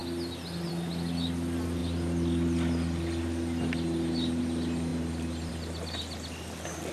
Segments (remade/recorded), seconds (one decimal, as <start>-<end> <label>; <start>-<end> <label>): 0.0-6.9 recorded